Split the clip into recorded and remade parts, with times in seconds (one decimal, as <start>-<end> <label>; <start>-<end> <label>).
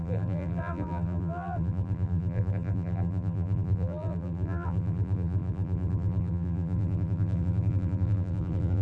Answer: 0.0-8.8 remade